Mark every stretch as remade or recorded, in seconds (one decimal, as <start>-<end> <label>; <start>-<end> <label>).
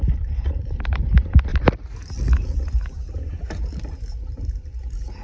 0.0-1.5 remade; 1.5-3.8 recorded; 3.8-5.2 remade